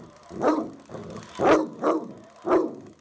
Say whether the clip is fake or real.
real